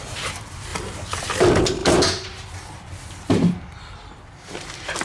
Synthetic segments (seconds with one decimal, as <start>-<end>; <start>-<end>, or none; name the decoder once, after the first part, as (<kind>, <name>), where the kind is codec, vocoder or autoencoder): 0.0-0.7 (vocoder, BigVGAN v2); 1.4-5.0